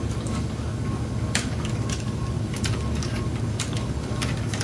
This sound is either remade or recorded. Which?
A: remade